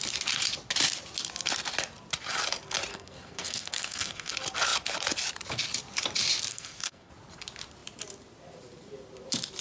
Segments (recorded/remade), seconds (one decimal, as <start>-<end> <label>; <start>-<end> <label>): 0.0-2.9 recorded; 2.9-4.3 remade; 4.3-6.5 recorded; 6.5-7.1 remade; 7.1-9.6 recorded